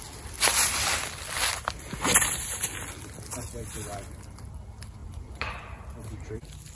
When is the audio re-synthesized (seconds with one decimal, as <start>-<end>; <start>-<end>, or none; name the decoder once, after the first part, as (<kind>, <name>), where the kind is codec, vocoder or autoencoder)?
5.0-5.8 (vocoder, Vocos)